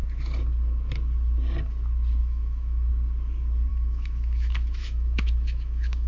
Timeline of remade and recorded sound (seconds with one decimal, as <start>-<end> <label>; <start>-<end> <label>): 0.0-2.2 recorded; 2.2-2.9 remade; 2.9-3.7 recorded; 3.7-6.1 remade